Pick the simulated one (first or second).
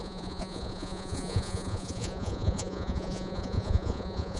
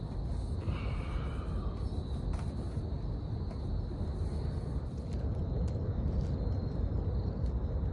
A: first